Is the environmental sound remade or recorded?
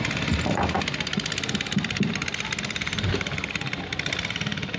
recorded